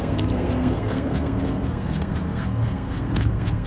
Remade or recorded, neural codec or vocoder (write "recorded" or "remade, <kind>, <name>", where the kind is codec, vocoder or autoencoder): remade, codec, SNAC